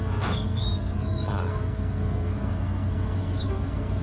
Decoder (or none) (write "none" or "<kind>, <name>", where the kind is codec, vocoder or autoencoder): codec, SNAC